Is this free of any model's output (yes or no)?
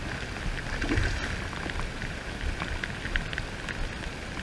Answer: yes